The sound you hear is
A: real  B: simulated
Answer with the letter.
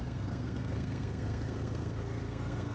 B